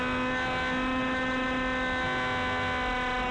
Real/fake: real